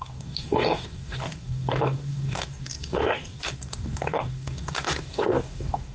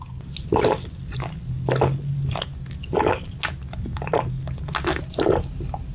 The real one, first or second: second